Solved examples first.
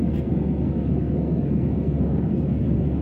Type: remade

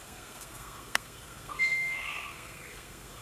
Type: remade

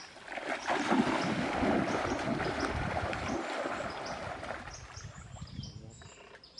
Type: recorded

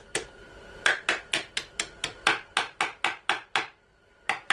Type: recorded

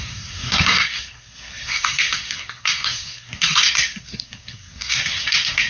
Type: remade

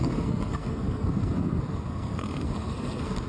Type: remade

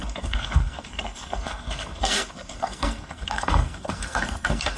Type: remade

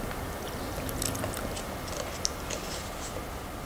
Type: recorded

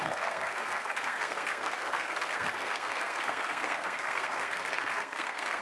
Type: remade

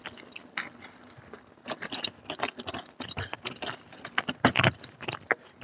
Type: recorded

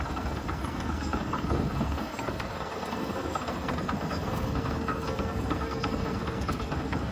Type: remade